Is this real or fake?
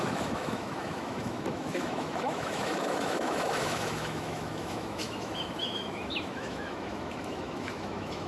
fake